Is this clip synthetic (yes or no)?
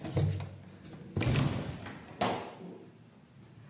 no